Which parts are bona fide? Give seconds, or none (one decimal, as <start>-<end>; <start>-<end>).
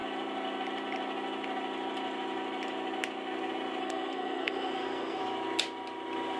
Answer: 0.0-3.8; 5.2-6.4